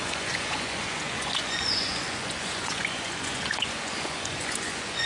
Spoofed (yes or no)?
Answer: yes